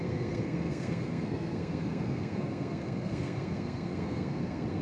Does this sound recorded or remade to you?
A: remade